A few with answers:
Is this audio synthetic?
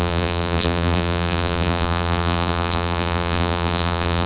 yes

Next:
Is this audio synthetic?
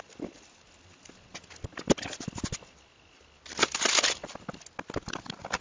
no